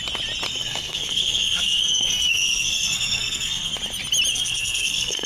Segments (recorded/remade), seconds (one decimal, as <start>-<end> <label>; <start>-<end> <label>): 0.0-0.5 recorded; 0.5-3.7 remade; 3.7-4.3 recorded; 4.3-5.3 remade